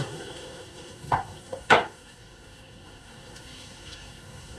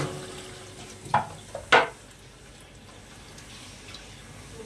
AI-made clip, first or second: first